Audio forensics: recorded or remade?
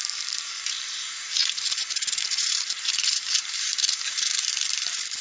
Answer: remade